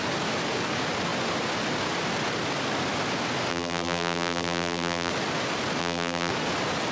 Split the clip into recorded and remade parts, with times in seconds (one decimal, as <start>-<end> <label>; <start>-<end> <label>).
0.0-3.5 recorded; 3.5-5.1 remade; 5.1-5.8 recorded; 5.8-6.3 remade; 6.3-6.9 recorded